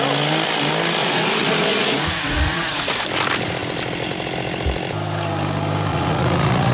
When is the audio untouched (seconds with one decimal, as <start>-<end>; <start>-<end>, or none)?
0.0-1.0; 3.0-5.9